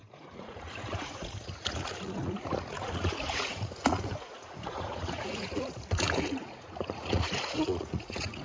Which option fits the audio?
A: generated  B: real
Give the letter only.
A